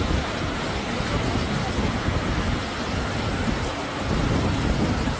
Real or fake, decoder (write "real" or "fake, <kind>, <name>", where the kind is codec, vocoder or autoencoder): real